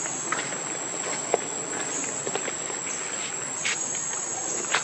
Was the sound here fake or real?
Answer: real